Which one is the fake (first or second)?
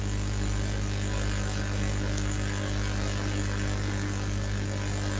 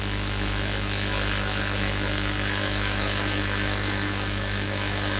second